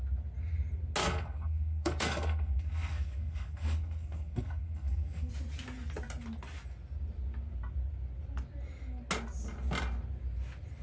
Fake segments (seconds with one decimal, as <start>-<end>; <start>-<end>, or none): 1.0-5.3